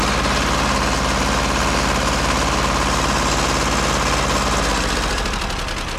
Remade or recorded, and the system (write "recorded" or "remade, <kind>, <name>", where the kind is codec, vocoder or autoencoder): recorded